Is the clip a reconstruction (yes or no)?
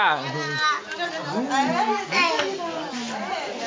no